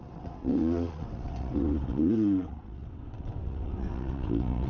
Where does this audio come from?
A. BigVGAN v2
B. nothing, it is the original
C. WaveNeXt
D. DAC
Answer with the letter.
C